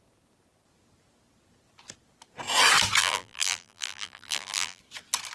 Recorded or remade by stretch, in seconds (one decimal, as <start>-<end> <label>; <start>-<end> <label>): 0.0-3.0 recorded; 3.0-4.8 remade; 4.8-5.3 recorded